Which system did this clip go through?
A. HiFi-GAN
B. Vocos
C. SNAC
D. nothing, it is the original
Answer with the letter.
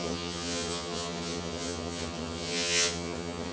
A